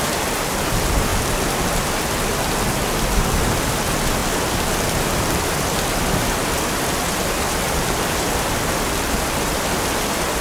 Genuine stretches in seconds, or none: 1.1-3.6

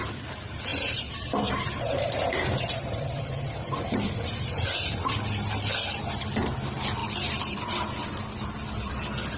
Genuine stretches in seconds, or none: 0.0-0.7; 5.1-7.0; 8.9-9.4

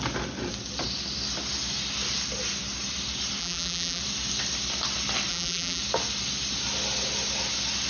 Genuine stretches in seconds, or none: 0.0-3.4; 4.0-5.3; 5.8-7.9

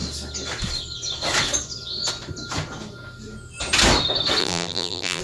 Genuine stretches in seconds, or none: 0.0-4.4

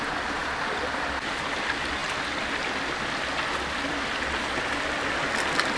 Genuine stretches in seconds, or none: 0.0-5.8

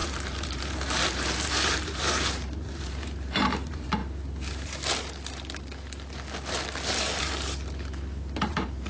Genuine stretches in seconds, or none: 4.0-8.5

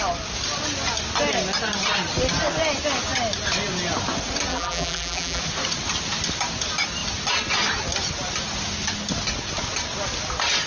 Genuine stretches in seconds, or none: 0.0-4.5; 5.4-10.7

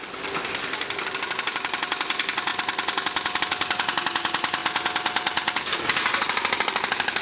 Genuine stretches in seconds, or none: 0.0-7.2